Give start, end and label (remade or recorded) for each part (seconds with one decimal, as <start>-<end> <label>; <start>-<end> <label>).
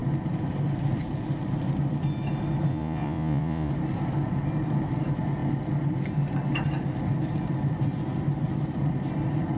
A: 0.0-2.7 recorded; 2.7-3.7 remade; 3.7-9.6 recorded